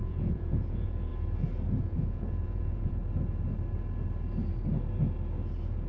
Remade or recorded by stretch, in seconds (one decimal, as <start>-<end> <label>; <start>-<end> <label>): 0.0-1.1 remade; 1.1-1.8 recorded; 1.8-3.0 remade; 3.0-5.9 recorded